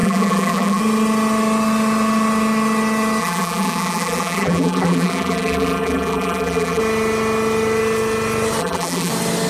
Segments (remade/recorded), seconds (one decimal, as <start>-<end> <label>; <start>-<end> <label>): 0.0-0.8 remade; 0.8-3.2 recorded; 3.2-6.8 remade; 6.8-8.6 recorded; 8.6-9.1 remade; 9.1-9.5 recorded